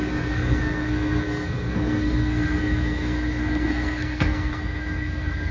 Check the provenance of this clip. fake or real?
fake